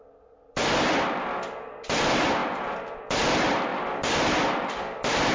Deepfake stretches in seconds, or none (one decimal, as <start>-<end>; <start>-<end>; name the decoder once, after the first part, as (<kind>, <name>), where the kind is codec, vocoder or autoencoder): 2.4-3.0 (vocoder, BigVGAN v2); 3.7-4.7